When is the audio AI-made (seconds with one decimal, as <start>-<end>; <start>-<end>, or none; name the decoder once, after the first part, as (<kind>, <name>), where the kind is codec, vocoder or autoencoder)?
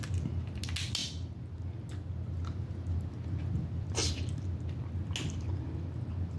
none